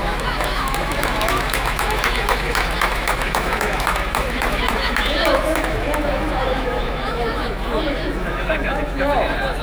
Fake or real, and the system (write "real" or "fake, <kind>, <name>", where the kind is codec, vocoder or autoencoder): fake, autoencoder, DAC-VAE